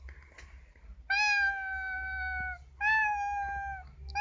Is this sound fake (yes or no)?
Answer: no